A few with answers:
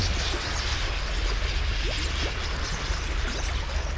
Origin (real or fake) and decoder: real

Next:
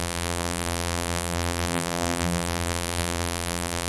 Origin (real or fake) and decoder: fake, vocoder, BigVGAN v2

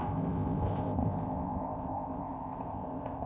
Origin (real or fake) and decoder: fake, codec, ZipCodec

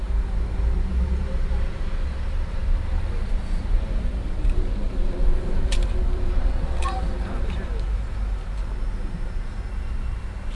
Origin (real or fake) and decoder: fake, vocoder, BigVGAN v2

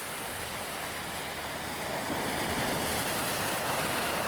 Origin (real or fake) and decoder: real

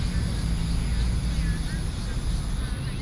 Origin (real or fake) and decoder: real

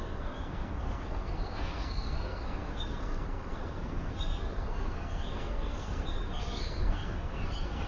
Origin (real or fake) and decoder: fake, codec, SNAC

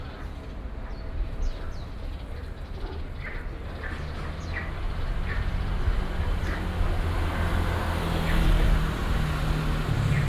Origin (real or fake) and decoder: real